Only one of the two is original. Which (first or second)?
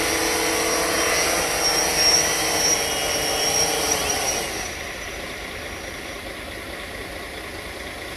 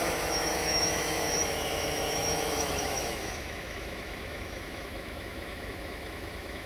first